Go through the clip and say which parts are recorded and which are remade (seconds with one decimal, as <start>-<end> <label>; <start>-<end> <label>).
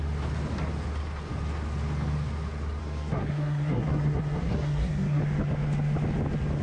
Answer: 0.0-2.8 recorded; 2.8-5.2 remade; 5.2-6.6 recorded